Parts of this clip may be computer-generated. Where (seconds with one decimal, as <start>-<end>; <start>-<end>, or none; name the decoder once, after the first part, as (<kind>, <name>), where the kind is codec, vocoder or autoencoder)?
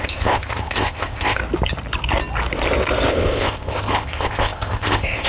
0.0-1.4 (codec, ZipCodec); 3.1-5.3